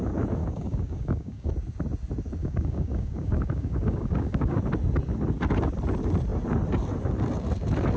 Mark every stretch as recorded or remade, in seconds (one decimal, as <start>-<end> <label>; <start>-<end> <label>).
0.0-0.4 recorded; 0.4-1.5 remade; 1.5-2.4 recorded; 2.4-4.6 remade; 4.6-8.0 recorded